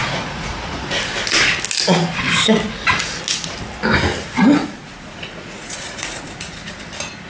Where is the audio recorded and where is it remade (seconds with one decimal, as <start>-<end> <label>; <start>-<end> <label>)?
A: 0.0-1.0 remade; 1.0-4.6 recorded; 4.6-6.7 remade; 6.7-7.3 recorded